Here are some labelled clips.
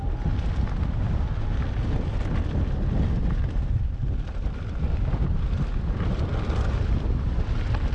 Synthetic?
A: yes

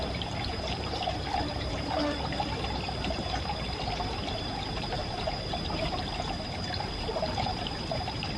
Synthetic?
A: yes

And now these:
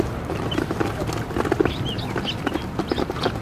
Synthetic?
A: yes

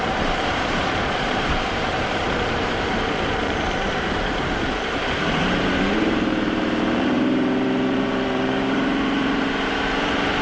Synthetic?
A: yes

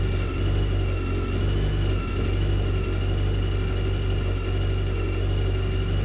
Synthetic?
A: no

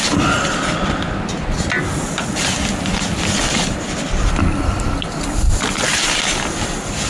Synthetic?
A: no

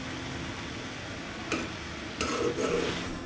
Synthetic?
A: no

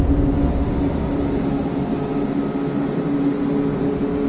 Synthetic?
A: no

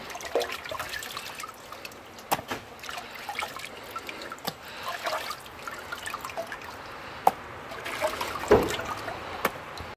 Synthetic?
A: no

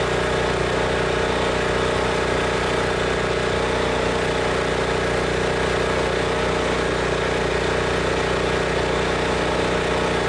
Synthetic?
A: no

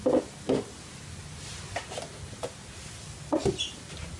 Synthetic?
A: no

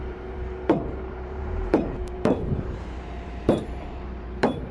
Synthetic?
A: yes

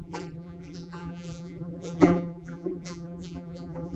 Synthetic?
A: yes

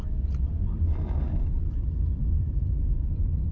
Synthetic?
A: yes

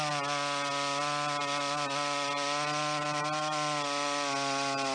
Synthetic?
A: no